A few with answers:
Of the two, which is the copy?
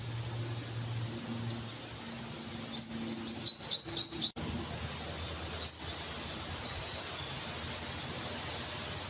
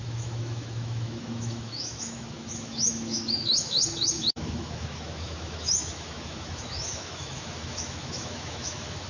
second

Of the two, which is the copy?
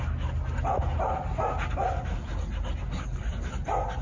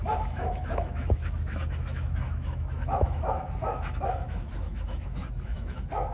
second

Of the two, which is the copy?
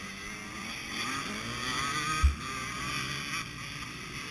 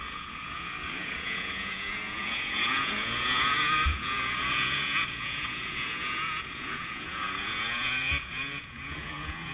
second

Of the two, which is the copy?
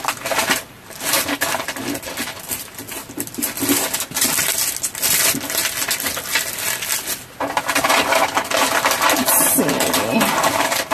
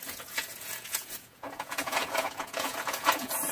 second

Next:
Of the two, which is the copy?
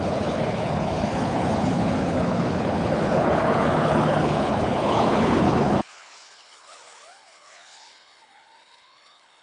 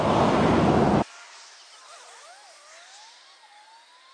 first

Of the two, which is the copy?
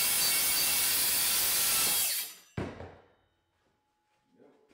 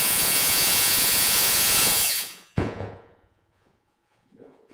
second